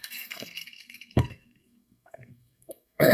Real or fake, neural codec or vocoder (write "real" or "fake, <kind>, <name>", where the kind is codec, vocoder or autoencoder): fake, codec, SNAC